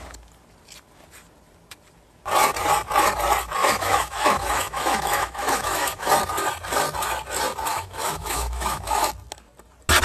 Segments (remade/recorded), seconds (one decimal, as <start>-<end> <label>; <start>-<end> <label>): 0.0-3.6 recorded; 3.6-6.1 remade; 6.1-7.7 recorded; 7.7-9.1 remade; 9.1-10.0 recorded